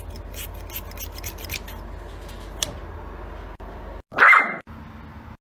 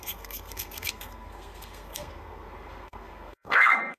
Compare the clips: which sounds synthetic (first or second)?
second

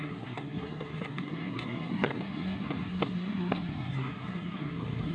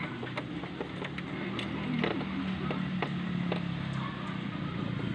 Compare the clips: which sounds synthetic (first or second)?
first